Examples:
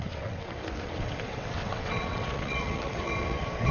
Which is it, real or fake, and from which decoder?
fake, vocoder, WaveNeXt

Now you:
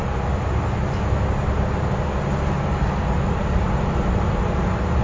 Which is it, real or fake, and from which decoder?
real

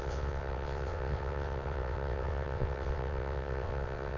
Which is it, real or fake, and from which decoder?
fake, vocoder, WaveNeXt